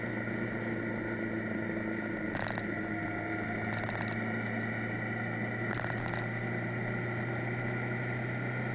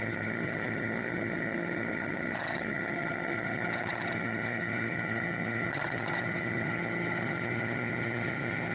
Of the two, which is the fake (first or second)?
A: second